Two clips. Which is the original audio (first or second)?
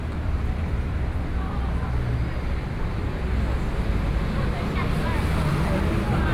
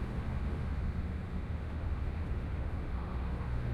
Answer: first